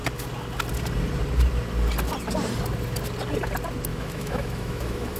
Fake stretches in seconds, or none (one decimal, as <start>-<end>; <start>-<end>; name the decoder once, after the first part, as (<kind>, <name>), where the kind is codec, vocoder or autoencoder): 3.9-5.2 (autoencoder, DAC-VAE)